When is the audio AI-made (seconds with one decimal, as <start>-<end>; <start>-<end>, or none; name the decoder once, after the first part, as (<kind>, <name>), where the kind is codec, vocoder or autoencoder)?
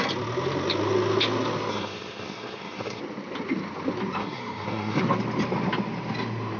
1.7-3.0 (codec, SNAC); 4.2-5.0